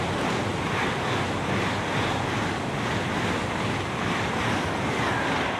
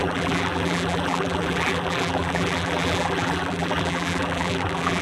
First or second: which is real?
first